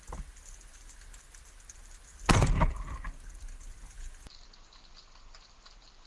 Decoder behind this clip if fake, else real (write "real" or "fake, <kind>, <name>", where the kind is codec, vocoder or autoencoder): real